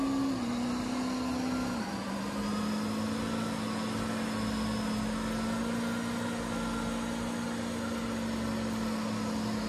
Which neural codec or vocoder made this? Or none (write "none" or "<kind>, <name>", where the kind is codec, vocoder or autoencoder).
none